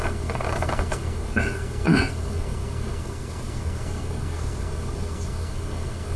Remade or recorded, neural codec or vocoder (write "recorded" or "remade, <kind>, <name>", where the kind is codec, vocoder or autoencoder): remade, codec, SNAC